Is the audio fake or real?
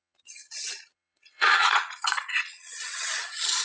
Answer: fake